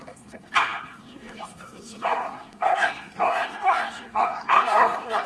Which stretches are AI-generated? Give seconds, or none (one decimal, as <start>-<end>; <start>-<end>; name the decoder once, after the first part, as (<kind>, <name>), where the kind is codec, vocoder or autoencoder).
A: 0.0-5.3 (codec, SNAC)